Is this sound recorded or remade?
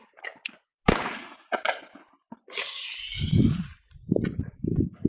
recorded